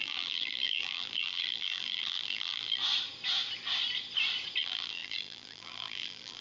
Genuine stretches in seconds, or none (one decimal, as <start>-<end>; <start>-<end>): 2.8-4.6